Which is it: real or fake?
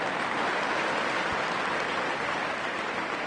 real